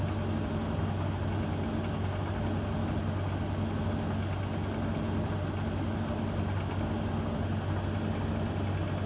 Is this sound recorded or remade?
recorded